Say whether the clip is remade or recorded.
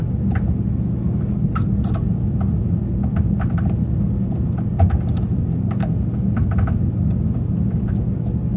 recorded